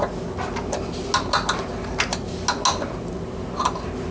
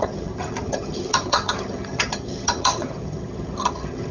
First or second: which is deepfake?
second